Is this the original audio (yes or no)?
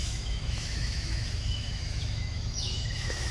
no